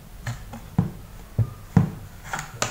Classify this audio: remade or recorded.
recorded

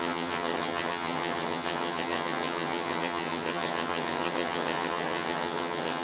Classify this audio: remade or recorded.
remade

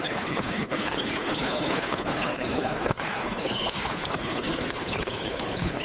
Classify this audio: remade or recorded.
remade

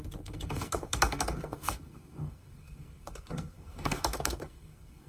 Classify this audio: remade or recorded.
remade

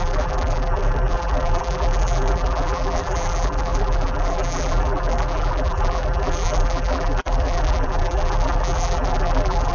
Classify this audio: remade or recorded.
remade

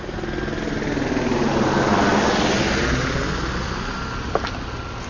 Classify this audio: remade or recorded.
recorded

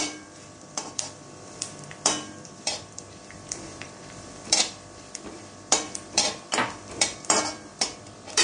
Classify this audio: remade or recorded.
remade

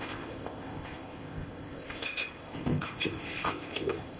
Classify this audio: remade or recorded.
remade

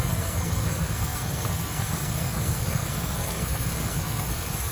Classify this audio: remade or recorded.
remade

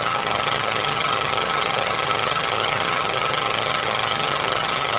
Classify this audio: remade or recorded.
remade